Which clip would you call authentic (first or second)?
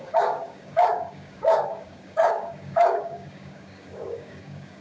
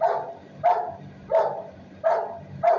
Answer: second